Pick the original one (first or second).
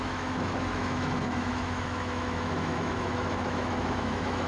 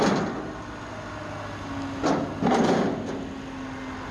second